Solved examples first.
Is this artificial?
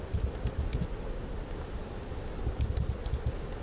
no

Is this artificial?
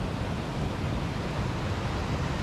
no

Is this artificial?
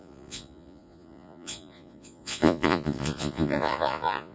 yes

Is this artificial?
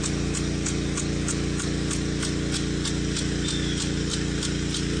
no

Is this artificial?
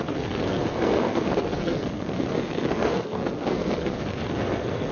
yes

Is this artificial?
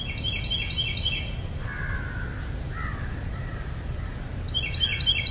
no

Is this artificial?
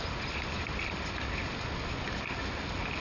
no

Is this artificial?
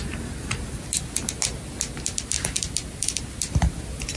no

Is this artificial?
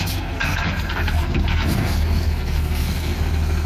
yes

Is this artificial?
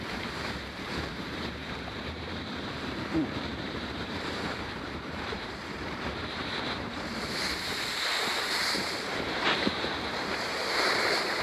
yes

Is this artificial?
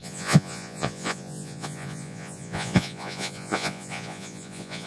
yes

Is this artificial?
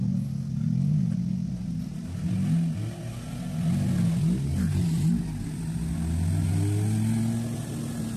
no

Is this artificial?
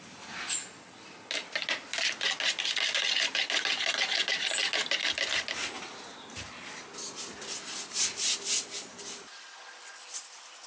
no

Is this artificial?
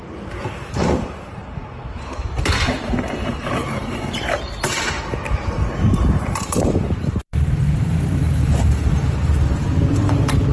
yes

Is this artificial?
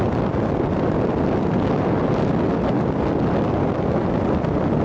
no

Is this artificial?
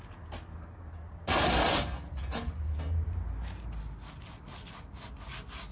no